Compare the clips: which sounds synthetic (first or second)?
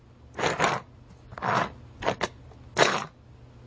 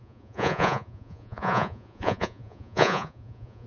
second